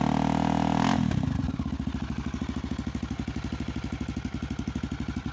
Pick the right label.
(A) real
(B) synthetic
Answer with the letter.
A